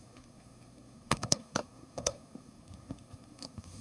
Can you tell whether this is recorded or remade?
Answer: remade